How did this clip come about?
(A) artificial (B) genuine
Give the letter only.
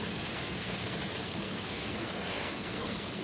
A